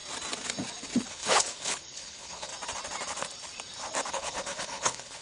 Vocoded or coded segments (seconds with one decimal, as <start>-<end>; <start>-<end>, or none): 1.1-2.5; 4.1-5.2